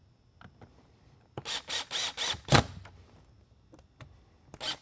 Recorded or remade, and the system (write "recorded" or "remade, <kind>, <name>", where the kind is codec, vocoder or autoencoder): recorded